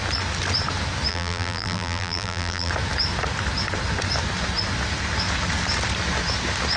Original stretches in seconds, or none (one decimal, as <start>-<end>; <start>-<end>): 0.0-1.1; 2.7-6.8